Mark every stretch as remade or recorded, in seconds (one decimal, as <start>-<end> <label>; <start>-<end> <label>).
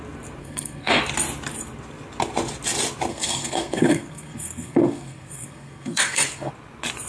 0.0-0.4 recorded; 0.4-1.0 remade; 1.0-3.1 recorded; 3.1-6.5 remade; 6.5-7.1 recorded